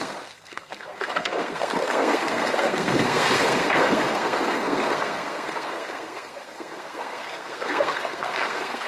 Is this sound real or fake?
fake